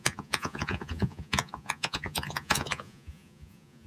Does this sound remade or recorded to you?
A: remade